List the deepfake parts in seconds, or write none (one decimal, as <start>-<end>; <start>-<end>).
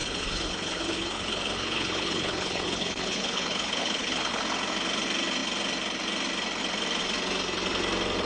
0.0-4.4